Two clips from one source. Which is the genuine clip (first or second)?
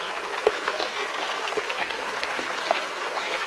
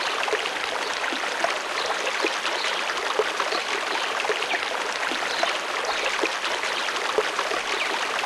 second